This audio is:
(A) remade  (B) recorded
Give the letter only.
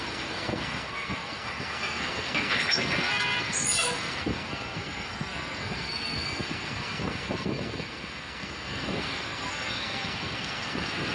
A